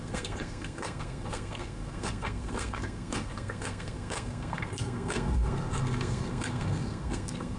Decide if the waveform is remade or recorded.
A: remade